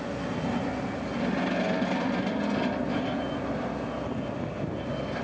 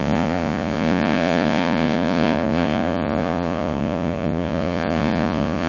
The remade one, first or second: second